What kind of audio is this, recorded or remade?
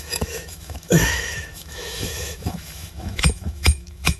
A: remade